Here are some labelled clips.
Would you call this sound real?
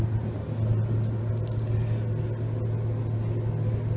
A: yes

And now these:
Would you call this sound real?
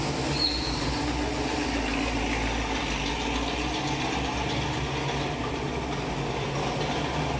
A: yes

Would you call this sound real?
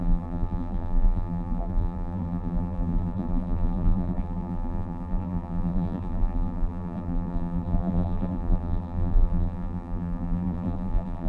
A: no